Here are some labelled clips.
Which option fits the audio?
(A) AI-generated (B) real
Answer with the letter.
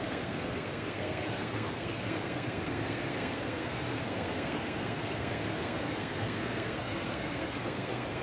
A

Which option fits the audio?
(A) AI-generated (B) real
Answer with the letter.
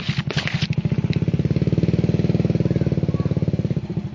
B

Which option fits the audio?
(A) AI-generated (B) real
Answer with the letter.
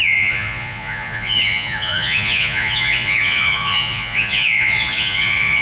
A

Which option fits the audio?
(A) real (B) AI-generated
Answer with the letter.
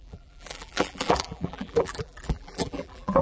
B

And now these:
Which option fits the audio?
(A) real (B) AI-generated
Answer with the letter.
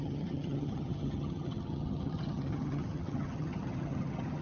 B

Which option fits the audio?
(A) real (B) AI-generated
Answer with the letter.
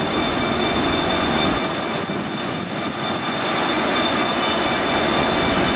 B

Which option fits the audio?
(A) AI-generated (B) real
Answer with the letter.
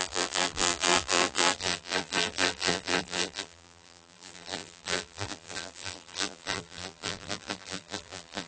A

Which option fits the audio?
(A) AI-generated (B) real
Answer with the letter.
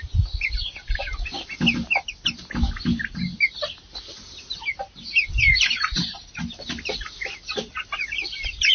B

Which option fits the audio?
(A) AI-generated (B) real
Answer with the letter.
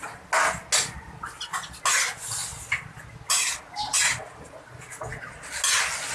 B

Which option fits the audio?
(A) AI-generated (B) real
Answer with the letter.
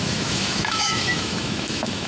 A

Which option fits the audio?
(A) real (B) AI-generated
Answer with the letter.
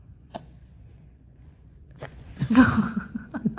B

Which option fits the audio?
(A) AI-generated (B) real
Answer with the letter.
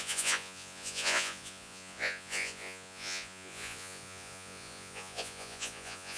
A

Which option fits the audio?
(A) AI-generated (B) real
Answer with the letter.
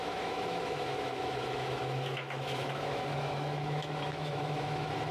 A